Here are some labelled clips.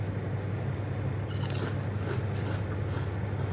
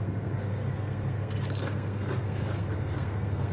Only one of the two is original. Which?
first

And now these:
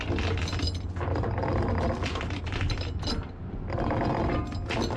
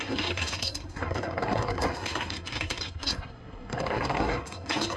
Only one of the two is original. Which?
first